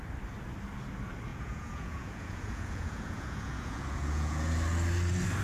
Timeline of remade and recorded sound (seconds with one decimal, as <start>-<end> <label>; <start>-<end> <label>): 0.0-1.3 recorded; 1.3-4.5 remade; 4.5-5.4 recorded